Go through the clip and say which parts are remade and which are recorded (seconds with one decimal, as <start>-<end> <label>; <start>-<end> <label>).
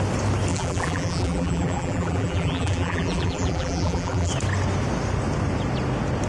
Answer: 0.0-0.5 recorded; 0.5-4.3 remade; 4.3-6.3 recorded